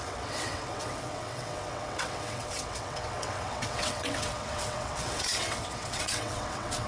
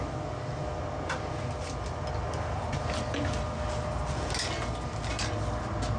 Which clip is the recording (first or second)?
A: second